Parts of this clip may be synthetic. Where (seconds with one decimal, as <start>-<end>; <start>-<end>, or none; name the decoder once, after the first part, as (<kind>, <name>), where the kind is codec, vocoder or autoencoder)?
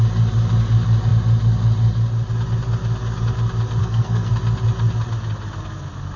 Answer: 3.8-4.3 (codec, SNAC)